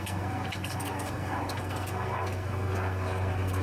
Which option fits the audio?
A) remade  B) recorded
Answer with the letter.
A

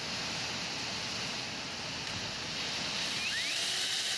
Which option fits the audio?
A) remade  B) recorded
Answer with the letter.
B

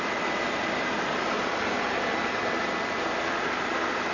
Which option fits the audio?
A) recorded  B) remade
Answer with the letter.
B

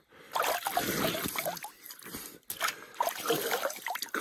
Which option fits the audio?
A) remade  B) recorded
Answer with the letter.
B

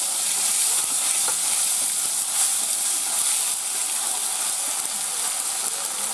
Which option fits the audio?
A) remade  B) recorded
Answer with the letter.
B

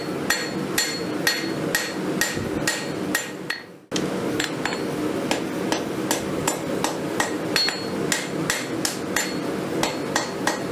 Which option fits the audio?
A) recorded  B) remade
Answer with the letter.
A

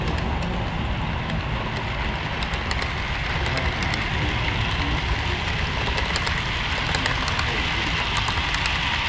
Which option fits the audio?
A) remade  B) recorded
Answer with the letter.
B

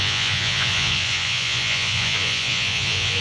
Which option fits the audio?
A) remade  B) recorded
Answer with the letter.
A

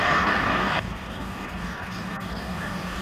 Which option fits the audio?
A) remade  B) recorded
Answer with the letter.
A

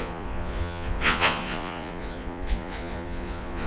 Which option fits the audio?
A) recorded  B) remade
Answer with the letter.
B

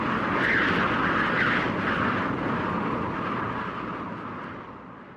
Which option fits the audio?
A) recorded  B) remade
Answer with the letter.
A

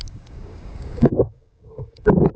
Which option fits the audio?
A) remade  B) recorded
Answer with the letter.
A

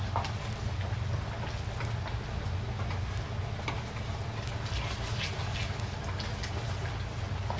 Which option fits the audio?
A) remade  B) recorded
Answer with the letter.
B